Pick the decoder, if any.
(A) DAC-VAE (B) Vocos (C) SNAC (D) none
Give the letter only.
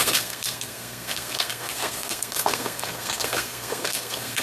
C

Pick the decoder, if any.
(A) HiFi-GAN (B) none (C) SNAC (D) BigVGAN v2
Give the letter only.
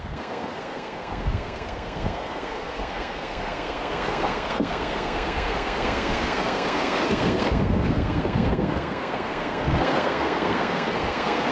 C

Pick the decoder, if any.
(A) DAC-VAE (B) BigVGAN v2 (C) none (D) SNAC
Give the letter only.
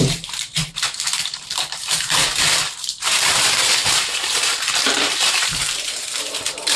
B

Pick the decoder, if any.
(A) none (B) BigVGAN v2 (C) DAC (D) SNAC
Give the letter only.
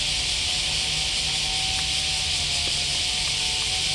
A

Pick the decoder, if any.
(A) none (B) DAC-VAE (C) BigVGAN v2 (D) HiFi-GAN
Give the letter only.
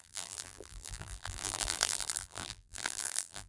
C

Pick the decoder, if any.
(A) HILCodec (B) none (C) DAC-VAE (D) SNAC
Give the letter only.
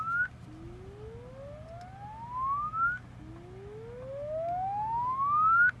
B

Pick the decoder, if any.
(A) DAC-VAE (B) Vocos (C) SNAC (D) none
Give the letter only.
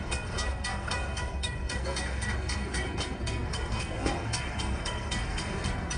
C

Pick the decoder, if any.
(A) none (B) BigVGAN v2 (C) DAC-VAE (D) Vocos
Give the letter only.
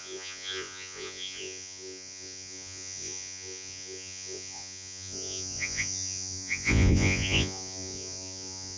D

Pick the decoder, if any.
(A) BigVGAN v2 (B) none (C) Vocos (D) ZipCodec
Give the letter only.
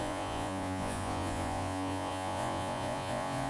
C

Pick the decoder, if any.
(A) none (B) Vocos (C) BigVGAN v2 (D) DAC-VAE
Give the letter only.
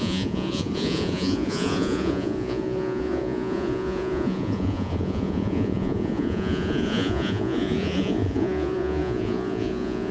B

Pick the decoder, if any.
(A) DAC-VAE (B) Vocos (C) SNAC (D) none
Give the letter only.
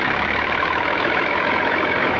A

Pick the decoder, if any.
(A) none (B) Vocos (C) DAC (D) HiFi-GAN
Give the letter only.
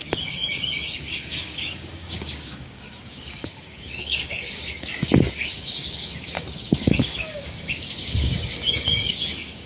C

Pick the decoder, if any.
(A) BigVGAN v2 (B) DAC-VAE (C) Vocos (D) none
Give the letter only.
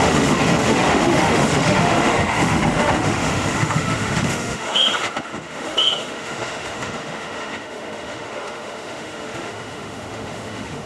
B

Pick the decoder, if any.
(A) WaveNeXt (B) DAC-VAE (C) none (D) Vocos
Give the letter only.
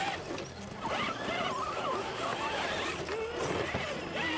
C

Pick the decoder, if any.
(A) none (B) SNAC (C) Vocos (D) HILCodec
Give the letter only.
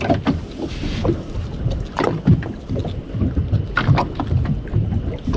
A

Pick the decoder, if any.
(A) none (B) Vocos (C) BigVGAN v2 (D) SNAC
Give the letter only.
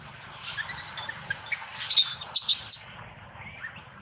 A